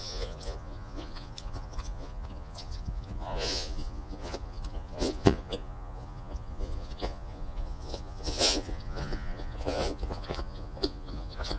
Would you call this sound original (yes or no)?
no